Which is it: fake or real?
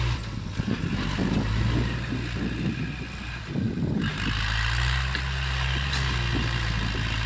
real